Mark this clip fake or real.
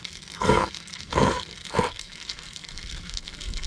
fake